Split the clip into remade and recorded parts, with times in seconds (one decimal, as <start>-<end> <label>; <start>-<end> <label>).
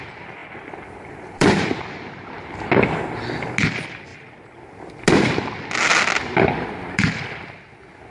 0.0-0.4 recorded; 0.4-1.8 remade; 1.8-8.1 recorded